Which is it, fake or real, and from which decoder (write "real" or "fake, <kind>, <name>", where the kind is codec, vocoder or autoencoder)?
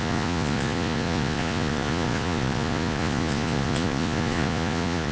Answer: fake, vocoder, Vocos